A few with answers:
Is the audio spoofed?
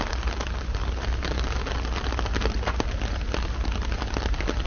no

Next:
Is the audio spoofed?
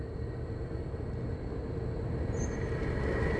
no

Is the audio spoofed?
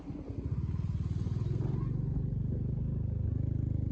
no